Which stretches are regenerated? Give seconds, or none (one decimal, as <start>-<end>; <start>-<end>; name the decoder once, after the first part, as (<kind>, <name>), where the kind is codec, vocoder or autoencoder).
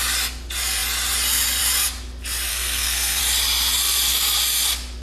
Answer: 2.5-3.2 (codec, SNAC)